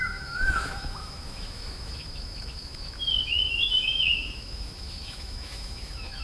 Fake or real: fake